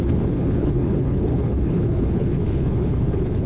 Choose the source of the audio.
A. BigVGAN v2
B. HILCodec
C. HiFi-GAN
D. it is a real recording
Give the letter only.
B